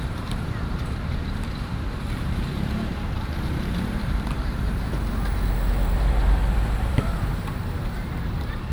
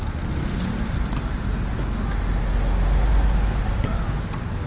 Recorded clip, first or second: second